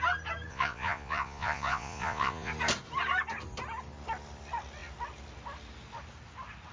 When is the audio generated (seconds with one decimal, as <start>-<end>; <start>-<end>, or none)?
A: 0.5-2.5